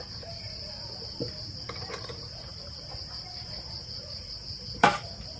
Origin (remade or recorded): remade